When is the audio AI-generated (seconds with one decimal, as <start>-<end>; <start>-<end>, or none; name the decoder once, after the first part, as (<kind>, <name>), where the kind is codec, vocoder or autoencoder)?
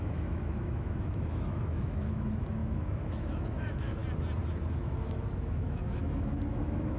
0.0-4.0 (autoencoder, DAC-VAE); 4.8-7.0